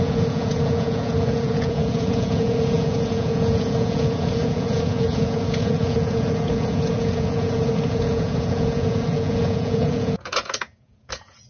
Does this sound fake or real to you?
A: fake